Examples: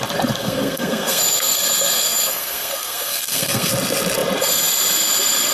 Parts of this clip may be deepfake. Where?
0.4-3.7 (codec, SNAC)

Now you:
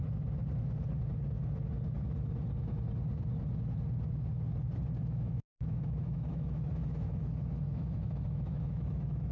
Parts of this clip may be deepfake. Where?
5.0-9.3 (autoencoder, DAC-VAE)

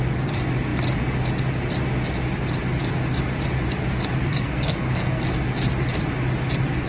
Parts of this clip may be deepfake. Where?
4.3-5.2 (codec, SNAC)

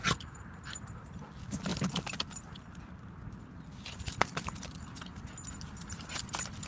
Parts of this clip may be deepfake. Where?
1.7-5.1 (vocoder, BigVGAN v2)

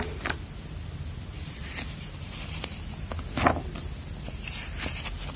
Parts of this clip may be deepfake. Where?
1.3-2.5 (vocoder, BigVGAN v2)

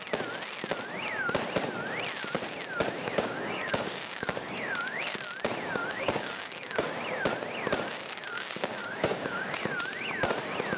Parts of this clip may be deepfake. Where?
3.0-5.0 (codec, DAC); 5.8-6.9; 8.0-9.6

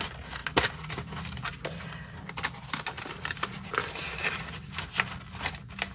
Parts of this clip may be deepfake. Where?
none